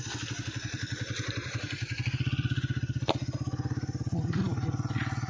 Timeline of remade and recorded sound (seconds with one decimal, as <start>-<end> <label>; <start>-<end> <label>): 0.0-5.3 recorded